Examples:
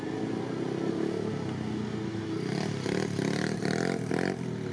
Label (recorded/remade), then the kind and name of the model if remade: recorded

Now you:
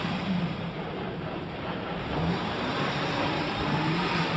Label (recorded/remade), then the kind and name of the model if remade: remade, vocoder, BigVGAN v2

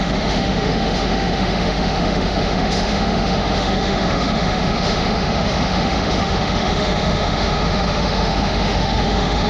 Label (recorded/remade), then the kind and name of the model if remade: remade, autoencoder, DAC-VAE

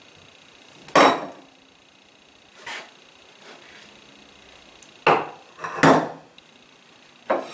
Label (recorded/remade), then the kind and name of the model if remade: recorded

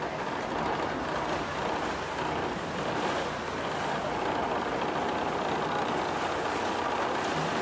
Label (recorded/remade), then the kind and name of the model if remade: recorded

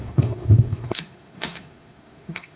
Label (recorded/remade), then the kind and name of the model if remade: remade, codec, SNAC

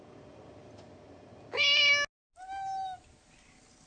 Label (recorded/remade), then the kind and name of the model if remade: recorded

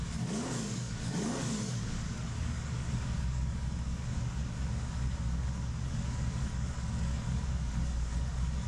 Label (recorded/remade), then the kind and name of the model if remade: remade, codec, DAC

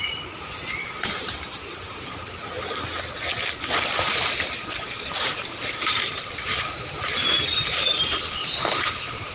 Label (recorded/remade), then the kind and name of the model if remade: recorded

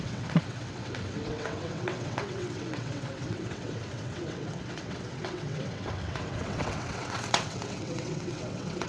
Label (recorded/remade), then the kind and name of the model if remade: remade, vocoder, WaveNeXt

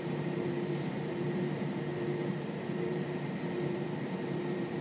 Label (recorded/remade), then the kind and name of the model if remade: remade, vocoder, BigVGAN v2